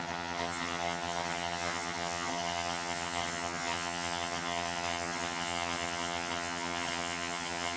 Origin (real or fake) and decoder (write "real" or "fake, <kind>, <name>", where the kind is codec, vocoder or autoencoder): fake, vocoder, HiFi-GAN